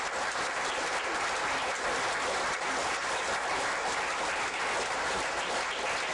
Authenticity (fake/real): real